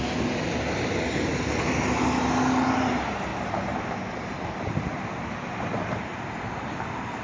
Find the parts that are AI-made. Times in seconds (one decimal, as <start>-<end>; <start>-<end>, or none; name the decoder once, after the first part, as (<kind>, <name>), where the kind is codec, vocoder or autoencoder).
none